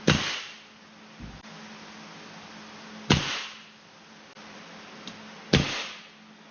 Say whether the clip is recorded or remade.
recorded